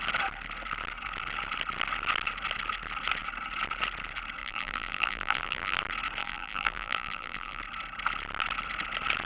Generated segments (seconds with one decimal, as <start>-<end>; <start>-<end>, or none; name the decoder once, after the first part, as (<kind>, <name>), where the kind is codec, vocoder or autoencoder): 4.4-5.8 (vocoder, BigVGAN v2); 6.2-7.6